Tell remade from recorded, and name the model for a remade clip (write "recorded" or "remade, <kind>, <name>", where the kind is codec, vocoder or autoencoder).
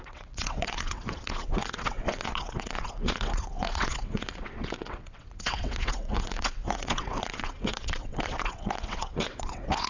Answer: remade, vocoder, WaveNeXt